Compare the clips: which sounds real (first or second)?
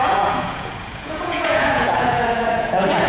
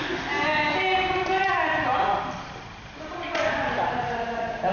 second